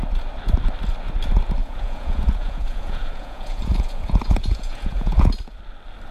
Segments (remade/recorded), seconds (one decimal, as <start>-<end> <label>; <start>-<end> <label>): 0.0-1.6 recorded; 1.6-5.3 remade; 5.3-6.1 recorded

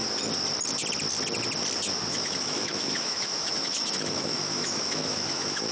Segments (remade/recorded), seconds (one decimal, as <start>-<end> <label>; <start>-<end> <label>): 0.0-2.1 recorded; 2.1-5.7 remade